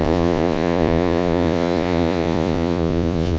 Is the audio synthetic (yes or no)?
yes